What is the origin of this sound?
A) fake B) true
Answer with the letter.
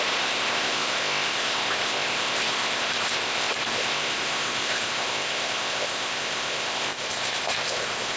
A